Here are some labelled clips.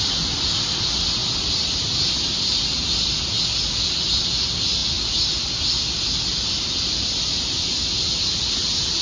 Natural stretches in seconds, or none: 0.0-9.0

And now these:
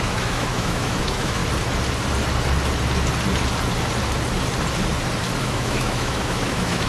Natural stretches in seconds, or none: 1.4-5.4

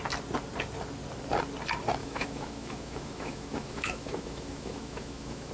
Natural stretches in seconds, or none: 0.0-2.0

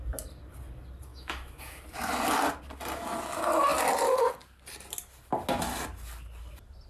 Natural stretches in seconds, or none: 0.0-1.1; 1.8-6.9

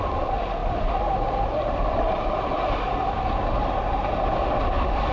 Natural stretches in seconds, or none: 0.0-5.1